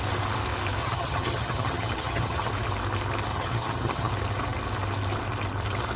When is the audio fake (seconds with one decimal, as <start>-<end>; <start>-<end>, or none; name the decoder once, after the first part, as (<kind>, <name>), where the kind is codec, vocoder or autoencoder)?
0.8-2.5 (vocoder, HiFi-GAN); 3.3-4.1